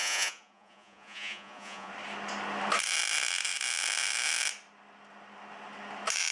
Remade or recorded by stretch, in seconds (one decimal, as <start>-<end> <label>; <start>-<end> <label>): 0.0-1.9 remade; 1.9-6.3 recorded